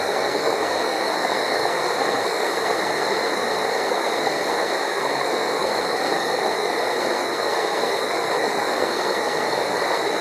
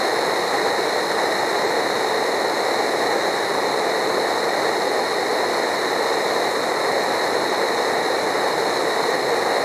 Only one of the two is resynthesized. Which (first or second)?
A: first